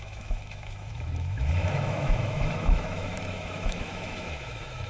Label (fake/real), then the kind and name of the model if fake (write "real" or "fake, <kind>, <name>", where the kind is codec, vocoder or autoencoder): fake, autoencoder, DAC-VAE